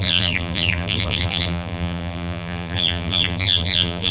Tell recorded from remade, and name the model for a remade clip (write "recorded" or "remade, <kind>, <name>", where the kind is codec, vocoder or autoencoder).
remade, vocoder, BigVGAN v2